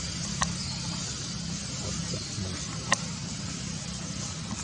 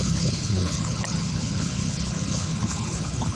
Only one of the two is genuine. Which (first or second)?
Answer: first